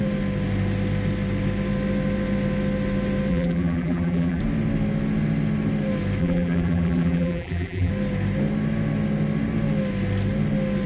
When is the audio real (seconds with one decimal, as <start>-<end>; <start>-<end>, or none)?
0.0-3.3; 4.4-6.2; 7.9-10.9